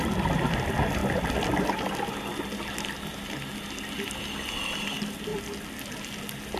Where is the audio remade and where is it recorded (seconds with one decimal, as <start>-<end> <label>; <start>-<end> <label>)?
0.0-6.6 recorded